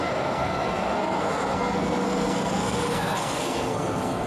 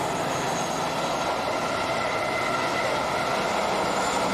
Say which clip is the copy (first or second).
first